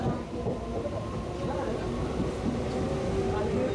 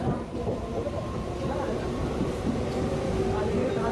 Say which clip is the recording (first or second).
first